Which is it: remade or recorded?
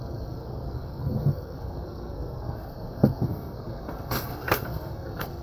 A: remade